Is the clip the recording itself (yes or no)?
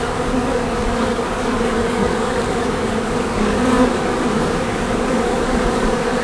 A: no